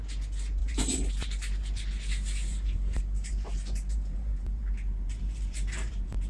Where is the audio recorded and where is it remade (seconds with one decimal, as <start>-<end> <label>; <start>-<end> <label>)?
0.0-0.6 recorded; 0.6-1.1 remade; 1.1-2.5 recorded; 2.5-6.3 remade